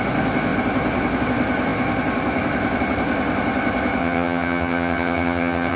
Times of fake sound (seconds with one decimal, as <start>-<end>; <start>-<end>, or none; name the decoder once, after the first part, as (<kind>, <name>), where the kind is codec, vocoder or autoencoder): 4.0-5.8 (vocoder, HiFi-GAN)